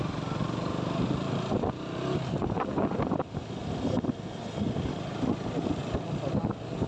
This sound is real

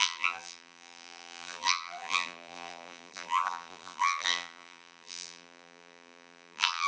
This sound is fake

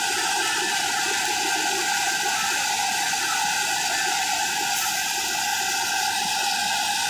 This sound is real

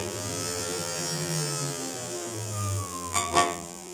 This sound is fake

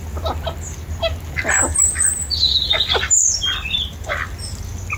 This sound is real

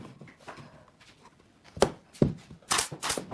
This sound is real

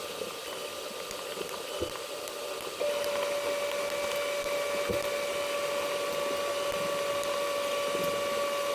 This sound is real